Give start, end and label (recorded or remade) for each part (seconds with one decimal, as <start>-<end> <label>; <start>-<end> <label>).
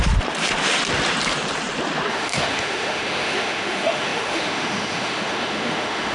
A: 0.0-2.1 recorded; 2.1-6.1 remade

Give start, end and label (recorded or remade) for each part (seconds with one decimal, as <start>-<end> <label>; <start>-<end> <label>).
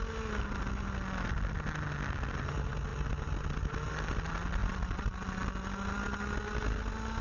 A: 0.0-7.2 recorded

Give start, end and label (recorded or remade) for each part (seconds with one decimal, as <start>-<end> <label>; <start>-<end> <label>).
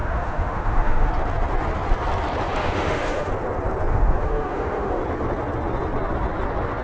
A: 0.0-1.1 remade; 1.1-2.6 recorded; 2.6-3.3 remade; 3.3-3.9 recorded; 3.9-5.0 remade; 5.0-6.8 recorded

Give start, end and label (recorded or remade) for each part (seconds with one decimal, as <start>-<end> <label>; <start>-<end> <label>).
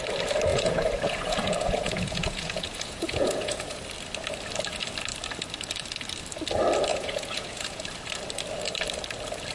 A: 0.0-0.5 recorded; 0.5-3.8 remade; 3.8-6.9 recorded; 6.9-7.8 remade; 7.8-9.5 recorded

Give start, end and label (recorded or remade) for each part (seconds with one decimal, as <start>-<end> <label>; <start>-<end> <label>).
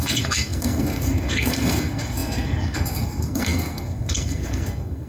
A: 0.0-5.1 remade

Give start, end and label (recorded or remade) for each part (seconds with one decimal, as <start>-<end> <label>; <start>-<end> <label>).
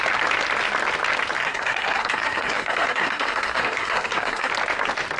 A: 0.0-1.4 recorded; 1.4-4.5 remade; 4.5-5.2 recorded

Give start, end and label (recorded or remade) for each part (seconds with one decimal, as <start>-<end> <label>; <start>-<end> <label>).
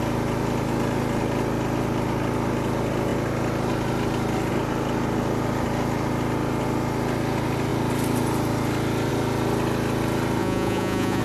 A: 0.0-10.4 recorded; 10.4-11.2 remade